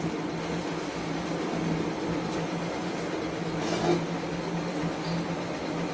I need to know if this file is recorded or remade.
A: recorded